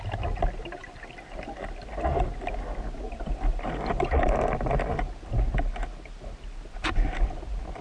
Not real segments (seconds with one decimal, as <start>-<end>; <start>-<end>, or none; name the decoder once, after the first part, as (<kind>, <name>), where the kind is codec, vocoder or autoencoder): none